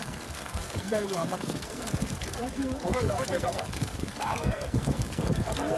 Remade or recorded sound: remade